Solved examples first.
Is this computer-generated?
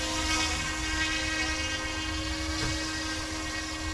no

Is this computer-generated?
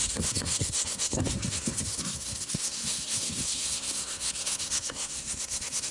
yes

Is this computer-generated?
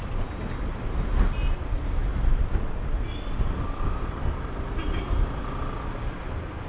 no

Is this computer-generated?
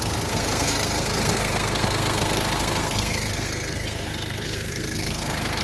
yes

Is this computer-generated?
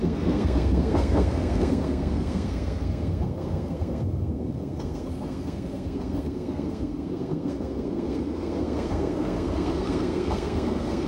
yes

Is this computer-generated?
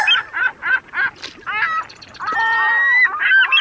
no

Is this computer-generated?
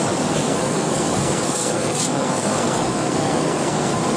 yes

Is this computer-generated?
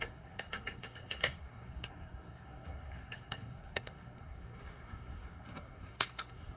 yes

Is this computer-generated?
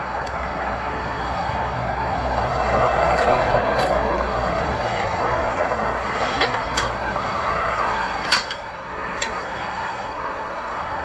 yes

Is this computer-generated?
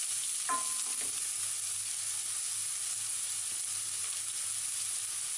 no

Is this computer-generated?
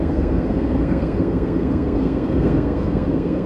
yes